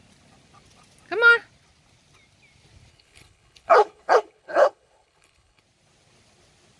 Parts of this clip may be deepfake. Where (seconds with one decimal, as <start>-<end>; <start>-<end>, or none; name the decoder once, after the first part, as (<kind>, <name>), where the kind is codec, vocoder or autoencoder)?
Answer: 2.9-5.6 (codec, HILCodec)